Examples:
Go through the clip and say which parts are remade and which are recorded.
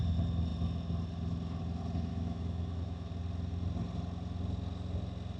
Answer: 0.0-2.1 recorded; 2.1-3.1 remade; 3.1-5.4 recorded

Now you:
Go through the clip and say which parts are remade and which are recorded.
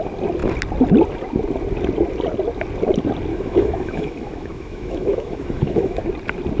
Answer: 0.0-3.3 recorded; 3.3-6.0 remade; 6.0-6.6 recorded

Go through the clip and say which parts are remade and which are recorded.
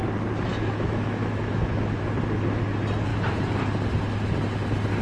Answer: 0.0-0.5 recorded; 0.5-2.0 remade; 2.0-5.0 recorded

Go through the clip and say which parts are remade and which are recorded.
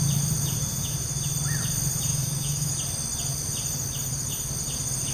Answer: 0.0-2.1 recorded; 2.1-2.7 remade; 2.7-5.1 recorded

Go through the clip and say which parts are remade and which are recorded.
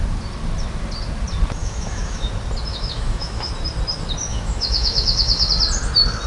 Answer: 0.0-1.6 recorded; 1.6-2.3 remade; 2.3-2.7 recorded; 2.7-3.5 remade; 3.5-4.3 recorded; 4.3-5.5 remade; 5.5-6.3 recorded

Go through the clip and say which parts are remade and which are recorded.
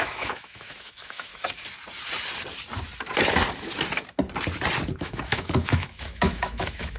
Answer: 0.0-1.3 remade; 1.3-5.0 recorded; 5.0-7.0 remade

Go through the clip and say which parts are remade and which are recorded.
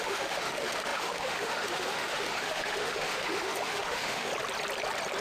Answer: 0.0-4.3 remade; 4.3-5.2 recorded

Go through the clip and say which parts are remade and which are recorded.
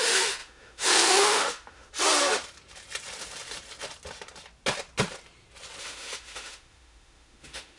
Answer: 0.0-1.9 remade; 1.9-5.8 recorded; 5.8-7.8 remade